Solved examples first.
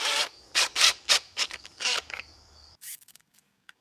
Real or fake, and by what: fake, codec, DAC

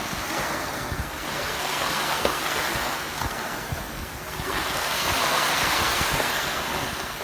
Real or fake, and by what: fake, codec, SNAC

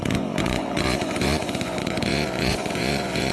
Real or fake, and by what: fake, vocoder, Vocos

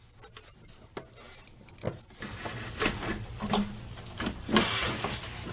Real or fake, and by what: real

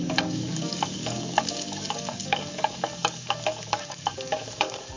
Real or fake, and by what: fake, codec, DAC